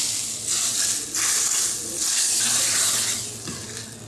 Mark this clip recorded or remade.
recorded